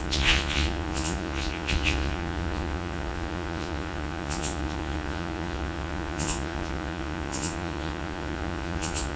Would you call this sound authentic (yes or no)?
no